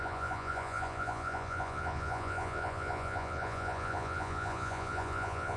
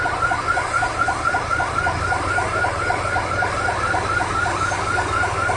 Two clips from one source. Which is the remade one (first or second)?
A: first